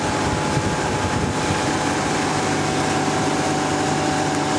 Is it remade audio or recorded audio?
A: recorded